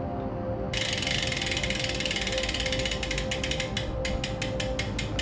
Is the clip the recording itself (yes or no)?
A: yes